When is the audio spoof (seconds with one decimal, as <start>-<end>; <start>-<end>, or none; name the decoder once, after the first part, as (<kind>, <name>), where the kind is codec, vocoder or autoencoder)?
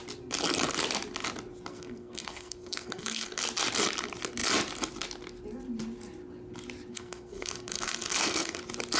1.7-3.4 (codec, SNAC); 6.9-8.6